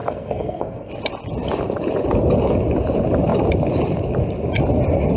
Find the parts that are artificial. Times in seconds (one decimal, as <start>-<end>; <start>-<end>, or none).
0.0-0.9